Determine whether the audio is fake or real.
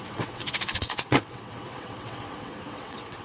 fake